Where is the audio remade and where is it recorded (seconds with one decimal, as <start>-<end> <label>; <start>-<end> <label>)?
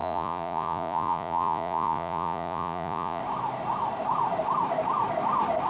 0.0-3.2 remade; 3.2-5.7 recorded